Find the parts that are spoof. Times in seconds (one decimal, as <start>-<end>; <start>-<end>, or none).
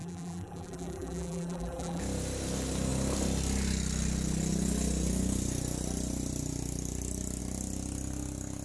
0.0-2.0